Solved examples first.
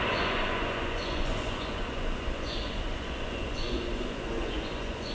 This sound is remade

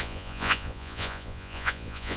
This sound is remade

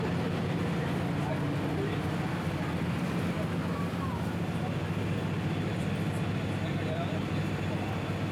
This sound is recorded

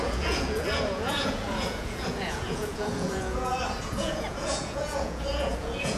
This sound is remade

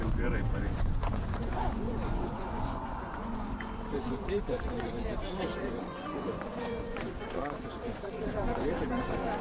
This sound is remade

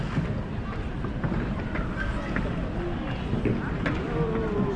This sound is recorded